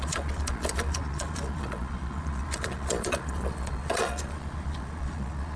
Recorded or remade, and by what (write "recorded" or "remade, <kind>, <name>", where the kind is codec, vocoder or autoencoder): remade, vocoder, Vocos